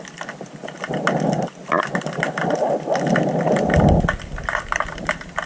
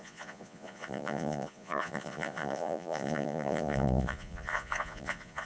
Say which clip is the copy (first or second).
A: second